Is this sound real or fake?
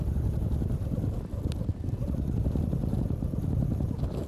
real